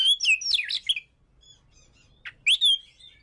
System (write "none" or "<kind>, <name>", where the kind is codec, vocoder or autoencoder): none